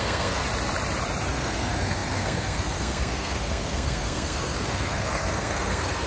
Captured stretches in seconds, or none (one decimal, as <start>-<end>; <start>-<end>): 0.4-1.3